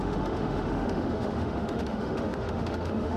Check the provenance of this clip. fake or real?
fake